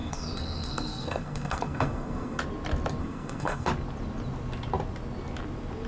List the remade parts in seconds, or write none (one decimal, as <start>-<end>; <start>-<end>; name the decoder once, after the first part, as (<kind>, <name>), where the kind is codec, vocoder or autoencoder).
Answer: 0.0-2.4 (codec, SNAC); 3.0-3.7